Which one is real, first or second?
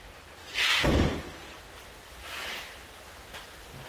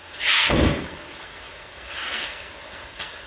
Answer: first